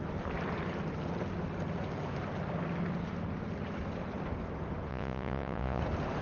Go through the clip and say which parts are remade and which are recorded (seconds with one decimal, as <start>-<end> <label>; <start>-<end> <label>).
0.0-4.9 recorded; 4.9-5.8 remade; 5.8-6.2 recorded